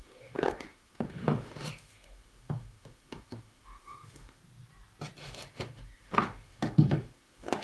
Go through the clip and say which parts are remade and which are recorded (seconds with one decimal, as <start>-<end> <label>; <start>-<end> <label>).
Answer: 0.0-4.4 remade; 4.4-5.2 recorded; 5.2-7.6 remade

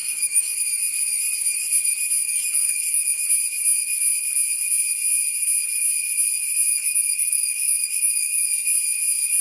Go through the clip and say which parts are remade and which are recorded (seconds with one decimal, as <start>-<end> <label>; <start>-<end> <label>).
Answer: 0.0-0.6 remade; 0.6-2.2 recorded; 2.2-3.2 remade; 3.2-6.7 recorded; 6.7-8.5 remade; 8.5-9.4 recorded

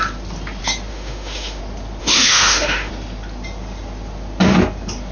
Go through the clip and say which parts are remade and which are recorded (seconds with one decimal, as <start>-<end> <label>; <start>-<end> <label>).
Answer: 0.0-0.9 recorded; 0.9-1.6 remade; 1.6-2.0 recorded; 2.0-2.9 remade; 2.9-5.1 recorded

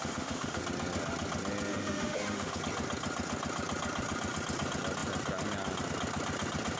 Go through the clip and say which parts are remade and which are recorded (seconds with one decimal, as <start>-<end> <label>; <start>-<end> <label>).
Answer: 0.0-0.6 remade; 0.6-1.7 recorded; 1.7-2.6 remade; 2.6-6.8 recorded

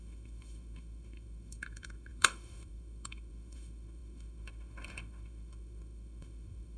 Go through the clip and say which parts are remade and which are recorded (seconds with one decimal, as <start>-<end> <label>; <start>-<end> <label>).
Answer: 0.0-6.8 remade

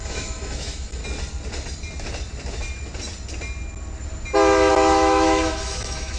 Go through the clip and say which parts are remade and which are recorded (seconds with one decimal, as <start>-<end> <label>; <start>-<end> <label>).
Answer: 0.0-1.0 remade; 1.0-4.7 recorded; 4.7-6.2 remade

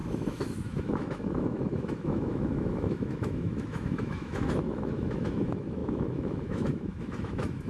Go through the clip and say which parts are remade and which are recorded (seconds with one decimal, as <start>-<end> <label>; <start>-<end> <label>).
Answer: 0.0-7.7 remade